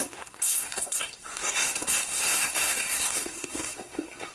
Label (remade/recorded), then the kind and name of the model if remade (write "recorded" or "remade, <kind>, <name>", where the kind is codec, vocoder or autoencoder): remade, codec, SNAC